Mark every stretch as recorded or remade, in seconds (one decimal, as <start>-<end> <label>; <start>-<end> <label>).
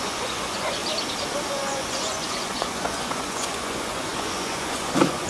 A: 0.0-0.8 remade; 0.8-1.5 recorded; 1.5-5.3 remade